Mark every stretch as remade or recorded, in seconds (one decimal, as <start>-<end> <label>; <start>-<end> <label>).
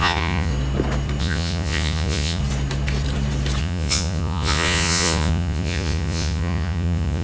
0.0-0.5 remade; 0.5-1.2 recorded; 1.2-2.4 remade; 2.4-3.6 recorded; 3.6-7.2 remade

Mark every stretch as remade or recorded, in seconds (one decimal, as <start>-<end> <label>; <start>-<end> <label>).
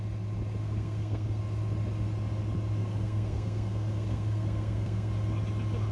0.0-0.6 recorded; 0.6-1.4 remade; 1.4-2.8 recorded; 2.8-5.1 remade; 5.1-5.9 recorded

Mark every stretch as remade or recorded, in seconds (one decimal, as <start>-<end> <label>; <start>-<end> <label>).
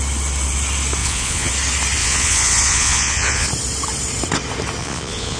0.0-1.0 recorded; 1.0-1.5 remade; 1.5-2.0 recorded; 2.0-3.5 remade; 3.5-4.8 recorded; 4.8-5.4 remade